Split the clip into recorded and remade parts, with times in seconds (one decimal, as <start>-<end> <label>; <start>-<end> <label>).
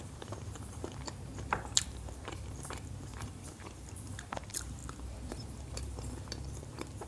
0.0-4.8 remade; 4.8-5.3 recorded; 5.3-7.1 remade